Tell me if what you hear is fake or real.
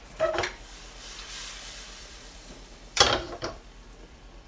fake